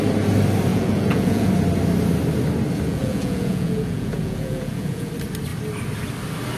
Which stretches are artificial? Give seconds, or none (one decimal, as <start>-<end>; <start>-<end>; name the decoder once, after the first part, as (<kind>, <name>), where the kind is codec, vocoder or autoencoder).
0.7-1.5 (vocoder, Vocos); 2.9-5.1